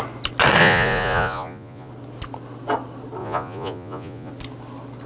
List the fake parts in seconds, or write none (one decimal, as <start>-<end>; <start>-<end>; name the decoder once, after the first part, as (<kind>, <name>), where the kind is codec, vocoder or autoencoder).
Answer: 0.6-1.9 (vocoder, Vocos); 3.2-4.3